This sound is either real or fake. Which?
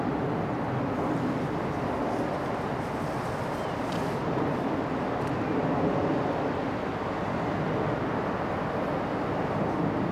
real